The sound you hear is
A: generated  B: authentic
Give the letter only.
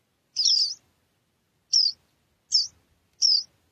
B